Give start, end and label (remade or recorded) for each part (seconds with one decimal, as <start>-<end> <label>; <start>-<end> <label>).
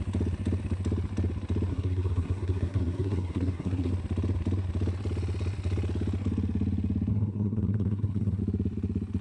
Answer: 0.0-1.7 recorded; 1.7-3.9 remade; 3.9-7.1 recorded; 7.1-8.4 remade; 8.4-9.2 recorded